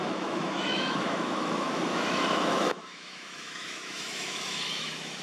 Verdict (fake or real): fake